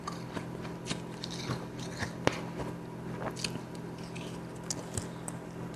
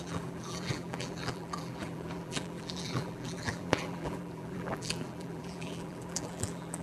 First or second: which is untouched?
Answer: first